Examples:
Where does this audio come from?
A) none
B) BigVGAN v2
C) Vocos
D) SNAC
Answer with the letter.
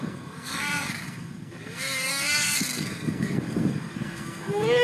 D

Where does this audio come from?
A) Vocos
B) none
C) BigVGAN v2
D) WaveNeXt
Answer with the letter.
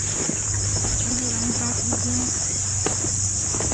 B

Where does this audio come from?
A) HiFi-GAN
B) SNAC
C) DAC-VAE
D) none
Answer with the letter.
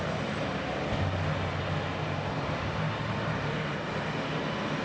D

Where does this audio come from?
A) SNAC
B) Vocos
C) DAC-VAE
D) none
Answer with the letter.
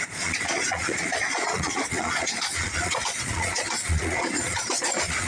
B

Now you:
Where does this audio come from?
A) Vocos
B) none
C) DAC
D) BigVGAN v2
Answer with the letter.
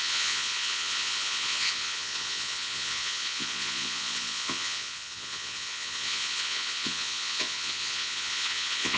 A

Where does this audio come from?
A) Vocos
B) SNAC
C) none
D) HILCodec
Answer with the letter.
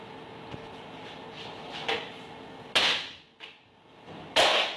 C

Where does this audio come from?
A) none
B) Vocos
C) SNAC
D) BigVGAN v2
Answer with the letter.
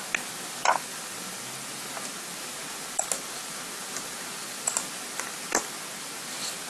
A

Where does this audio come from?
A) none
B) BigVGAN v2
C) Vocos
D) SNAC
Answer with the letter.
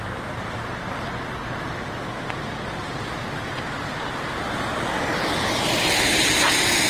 B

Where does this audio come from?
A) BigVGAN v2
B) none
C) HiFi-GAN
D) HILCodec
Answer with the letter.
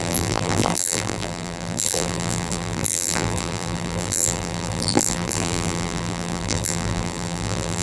A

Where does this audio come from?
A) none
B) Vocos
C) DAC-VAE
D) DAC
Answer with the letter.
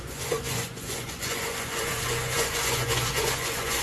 B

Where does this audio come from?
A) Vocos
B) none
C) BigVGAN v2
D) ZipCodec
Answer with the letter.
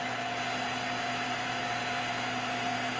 B